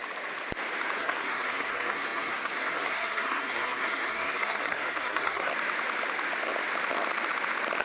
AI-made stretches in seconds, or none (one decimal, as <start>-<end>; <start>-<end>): 1.0-5.5